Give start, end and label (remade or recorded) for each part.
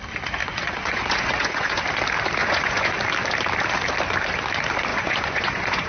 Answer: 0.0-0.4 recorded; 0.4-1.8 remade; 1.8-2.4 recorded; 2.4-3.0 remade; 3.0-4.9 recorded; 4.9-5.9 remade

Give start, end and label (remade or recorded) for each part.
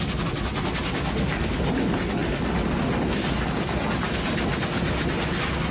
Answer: 0.0-5.7 recorded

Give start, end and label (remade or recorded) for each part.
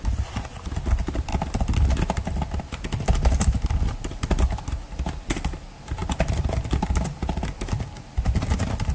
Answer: 0.0-8.9 recorded